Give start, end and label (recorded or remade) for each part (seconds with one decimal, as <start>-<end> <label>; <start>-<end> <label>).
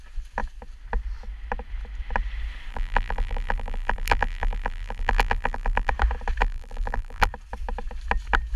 0.0-2.7 recorded; 2.7-5.9 remade; 5.9-6.4 recorded; 6.4-7.3 remade; 7.3-8.6 recorded